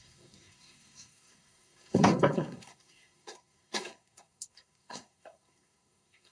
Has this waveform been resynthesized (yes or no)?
yes